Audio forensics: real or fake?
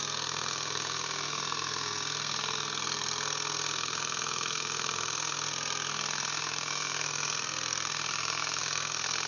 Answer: fake